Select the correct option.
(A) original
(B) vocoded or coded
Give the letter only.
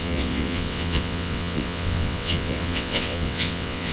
B